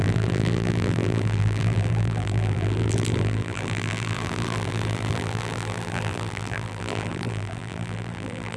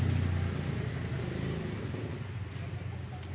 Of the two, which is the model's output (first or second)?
first